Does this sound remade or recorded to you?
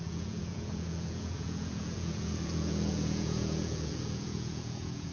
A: remade